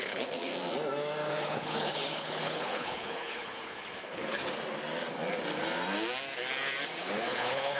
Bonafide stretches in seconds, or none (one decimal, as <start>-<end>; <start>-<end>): 0.5-1.3; 4.4-7.0